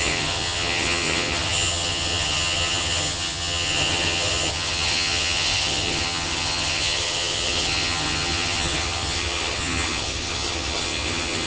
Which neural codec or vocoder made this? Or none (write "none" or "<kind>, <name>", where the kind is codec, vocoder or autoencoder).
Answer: vocoder, HiFi-GAN